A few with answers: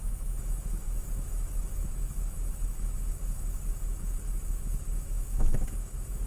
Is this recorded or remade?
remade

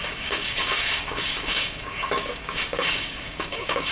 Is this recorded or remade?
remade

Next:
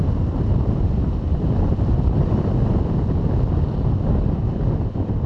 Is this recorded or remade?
remade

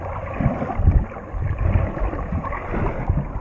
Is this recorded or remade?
recorded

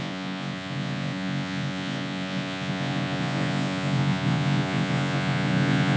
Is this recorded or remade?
remade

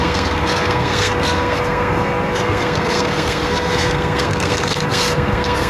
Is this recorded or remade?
remade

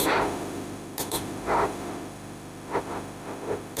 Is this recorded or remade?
remade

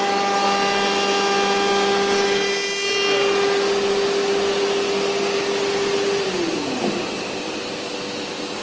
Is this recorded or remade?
recorded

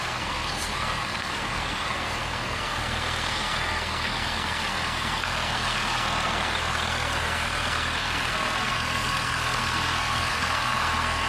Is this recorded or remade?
remade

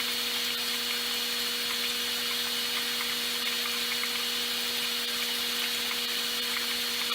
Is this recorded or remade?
recorded